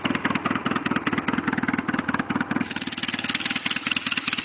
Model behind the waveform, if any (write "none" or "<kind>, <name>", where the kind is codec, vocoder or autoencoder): none